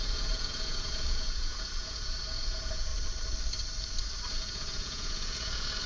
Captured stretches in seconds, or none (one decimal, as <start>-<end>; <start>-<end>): 2.9-4.4